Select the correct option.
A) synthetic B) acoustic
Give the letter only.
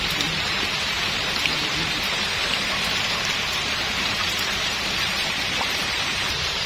A